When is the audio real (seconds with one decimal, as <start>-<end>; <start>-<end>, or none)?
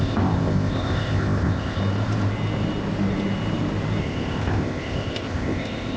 1.8-4.0